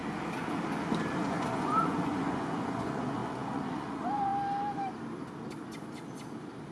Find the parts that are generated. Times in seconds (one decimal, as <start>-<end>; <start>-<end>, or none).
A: 1.2-4.3